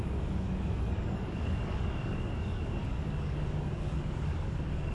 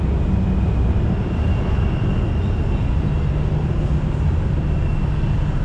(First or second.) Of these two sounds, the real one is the second